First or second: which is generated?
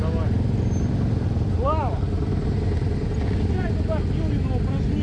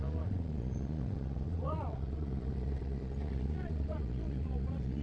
second